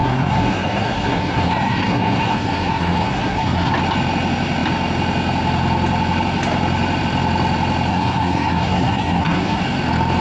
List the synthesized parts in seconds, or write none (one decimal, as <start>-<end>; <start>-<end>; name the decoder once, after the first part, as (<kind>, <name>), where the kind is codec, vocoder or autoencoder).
0.0-3.7 (codec, SNAC); 7.9-9.6